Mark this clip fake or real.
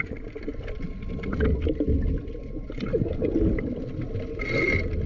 real